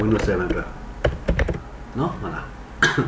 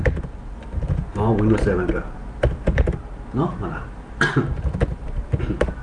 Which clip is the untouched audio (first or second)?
first